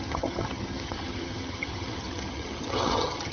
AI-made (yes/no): yes